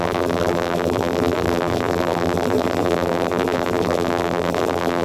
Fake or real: fake